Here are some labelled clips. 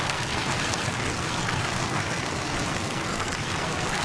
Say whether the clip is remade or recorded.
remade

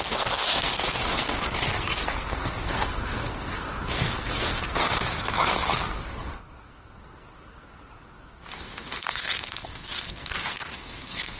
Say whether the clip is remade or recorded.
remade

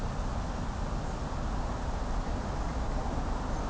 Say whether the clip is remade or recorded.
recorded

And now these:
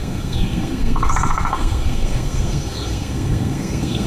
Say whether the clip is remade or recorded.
remade